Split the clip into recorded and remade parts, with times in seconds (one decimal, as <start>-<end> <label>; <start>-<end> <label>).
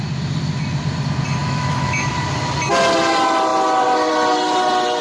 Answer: 0.0-1.4 recorded; 1.4-2.1 remade; 2.1-5.0 recorded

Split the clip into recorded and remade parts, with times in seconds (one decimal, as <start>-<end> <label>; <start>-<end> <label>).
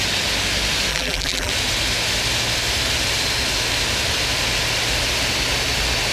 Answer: 0.0-0.9 recorded; 0.9-1.5 remade; 1.5-6.1 recorded